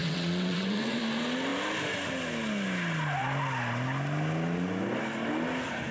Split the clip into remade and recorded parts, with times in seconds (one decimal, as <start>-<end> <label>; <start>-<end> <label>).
0.0-1.0 remade; 1.0-5.9 recorded